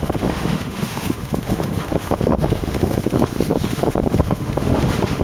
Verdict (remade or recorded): remade